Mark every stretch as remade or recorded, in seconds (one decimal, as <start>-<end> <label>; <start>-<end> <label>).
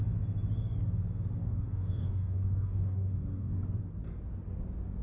0.0-1.4 recorded; 1.4-3.5 remade; 3.5-5.0 recorded